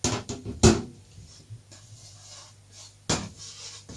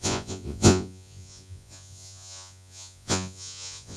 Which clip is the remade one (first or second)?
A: second